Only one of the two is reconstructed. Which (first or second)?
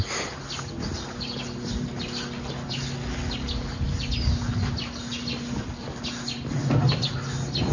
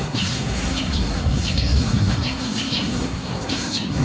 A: second